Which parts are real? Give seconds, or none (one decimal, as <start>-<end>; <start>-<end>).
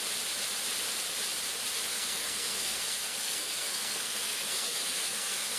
0.0-1.9